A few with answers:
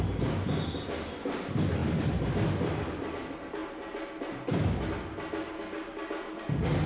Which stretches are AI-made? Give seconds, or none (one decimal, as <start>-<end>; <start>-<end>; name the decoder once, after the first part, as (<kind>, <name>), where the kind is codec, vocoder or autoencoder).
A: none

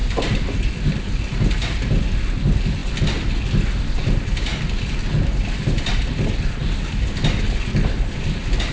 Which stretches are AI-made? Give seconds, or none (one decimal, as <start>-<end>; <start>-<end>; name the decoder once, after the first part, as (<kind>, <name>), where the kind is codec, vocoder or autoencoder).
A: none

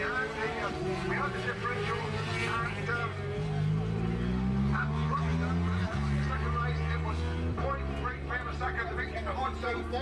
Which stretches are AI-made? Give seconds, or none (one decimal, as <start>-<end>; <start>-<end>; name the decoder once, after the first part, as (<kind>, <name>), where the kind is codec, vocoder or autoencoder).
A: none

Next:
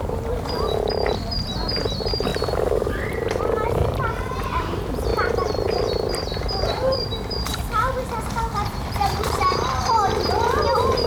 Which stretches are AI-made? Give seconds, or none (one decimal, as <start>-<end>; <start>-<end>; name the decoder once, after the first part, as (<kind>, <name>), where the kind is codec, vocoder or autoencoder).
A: 0.0-2.3 (vocoder, BigVGAN v2); 2.9-3.8; 4.5-11.1

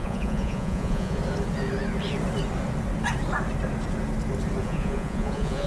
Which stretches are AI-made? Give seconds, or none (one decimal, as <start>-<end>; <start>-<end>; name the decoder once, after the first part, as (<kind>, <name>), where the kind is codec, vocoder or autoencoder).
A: 0.0-1.2 (vocoder, Vocos); 4.6-5.7

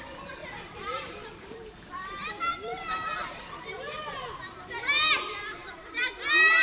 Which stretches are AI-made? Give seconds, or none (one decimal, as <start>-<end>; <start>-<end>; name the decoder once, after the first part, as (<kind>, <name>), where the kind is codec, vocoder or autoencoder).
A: 0.4-4.4 (vocoder, BigVGAN v2); 5.6-6.1

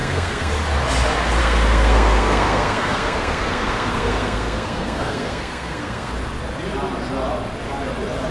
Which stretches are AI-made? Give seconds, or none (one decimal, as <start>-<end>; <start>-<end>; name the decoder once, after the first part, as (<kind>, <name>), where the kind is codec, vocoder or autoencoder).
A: 0.0-0.5 (codec, SNAC); 1.4-6.1

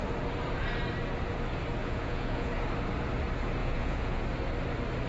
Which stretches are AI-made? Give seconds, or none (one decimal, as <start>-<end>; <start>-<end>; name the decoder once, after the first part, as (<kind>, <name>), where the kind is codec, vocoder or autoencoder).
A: 1.8-2.5 (vocoder, Vocos); 3.6-4.2